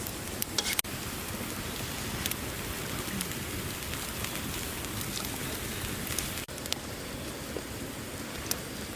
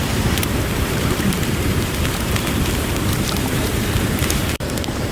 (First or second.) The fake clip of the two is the second